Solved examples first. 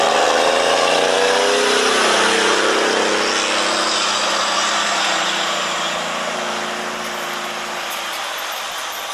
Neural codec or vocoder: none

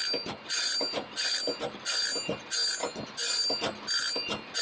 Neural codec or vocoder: none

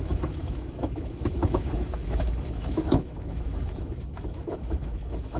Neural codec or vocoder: autoencoder, DAC-VAE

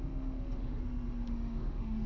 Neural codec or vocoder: autoencoder, DAC-VAE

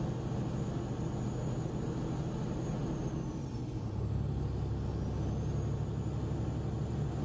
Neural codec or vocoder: none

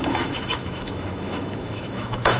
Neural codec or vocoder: autoencoder, DAC-VAE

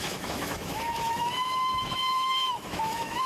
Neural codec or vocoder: autoencoder, DAC-VAE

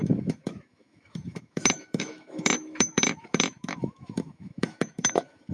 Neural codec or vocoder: autoencoder, DAC-VAE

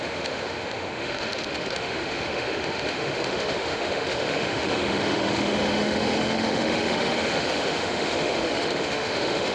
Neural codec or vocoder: autoencoder, DAC-VAE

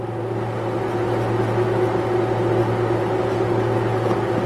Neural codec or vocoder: none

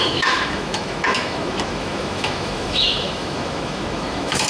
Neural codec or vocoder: autoencoder, DAC-VAE